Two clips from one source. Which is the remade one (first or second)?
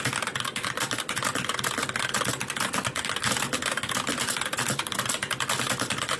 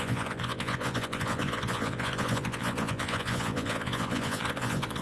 second